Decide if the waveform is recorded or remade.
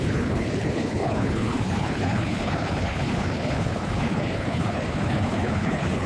remade